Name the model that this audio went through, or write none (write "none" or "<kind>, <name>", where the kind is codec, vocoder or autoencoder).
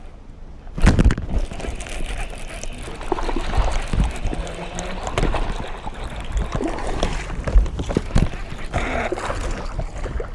none